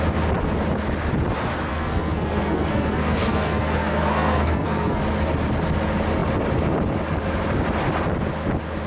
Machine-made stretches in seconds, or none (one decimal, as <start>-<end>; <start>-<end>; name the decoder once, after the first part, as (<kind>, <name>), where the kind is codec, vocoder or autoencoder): 1.7-5.0 (codec, SNAC)